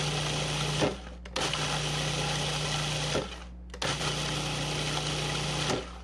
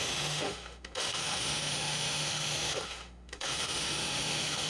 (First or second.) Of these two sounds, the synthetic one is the second